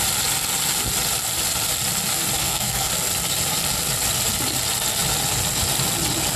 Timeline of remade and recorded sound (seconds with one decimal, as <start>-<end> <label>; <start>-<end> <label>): 0.0-2.4 recorded; 2.4-2.9 remade; 2.9-6.4 recorded